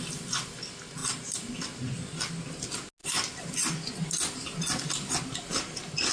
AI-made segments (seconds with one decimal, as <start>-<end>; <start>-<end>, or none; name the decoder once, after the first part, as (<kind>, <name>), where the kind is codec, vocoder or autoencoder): none